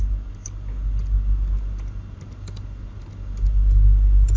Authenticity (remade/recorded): recorded